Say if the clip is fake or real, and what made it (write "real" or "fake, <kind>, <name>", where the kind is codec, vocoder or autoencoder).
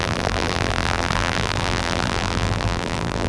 fake, vocoder, BigVGAN v2